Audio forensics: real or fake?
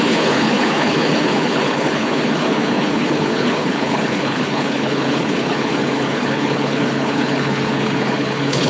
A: fake